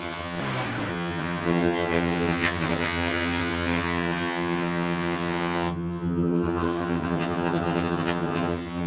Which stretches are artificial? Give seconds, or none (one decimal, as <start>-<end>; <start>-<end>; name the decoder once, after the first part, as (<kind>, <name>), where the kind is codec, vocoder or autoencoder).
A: 0.0-0.4 (vocoder, HiFi-GAN); 0.9-8.9